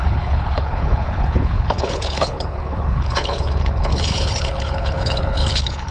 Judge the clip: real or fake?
fake